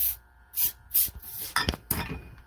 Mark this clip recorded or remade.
recorded